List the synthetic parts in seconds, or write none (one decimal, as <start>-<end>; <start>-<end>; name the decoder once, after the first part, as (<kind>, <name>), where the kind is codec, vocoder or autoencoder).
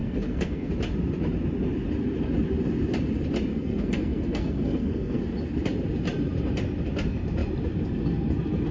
0.0-0.7 (codec, SNAC); 3.5-5.2